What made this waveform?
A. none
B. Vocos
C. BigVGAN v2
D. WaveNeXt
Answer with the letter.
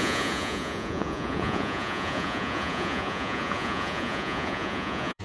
B